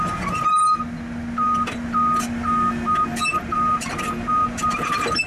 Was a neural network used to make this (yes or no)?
no